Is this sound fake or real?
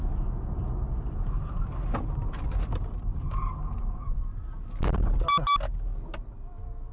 real